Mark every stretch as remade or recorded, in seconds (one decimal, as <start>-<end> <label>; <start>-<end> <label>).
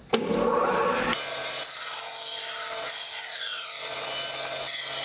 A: 0.0-5.0 recorded